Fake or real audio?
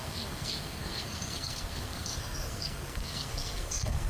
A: fake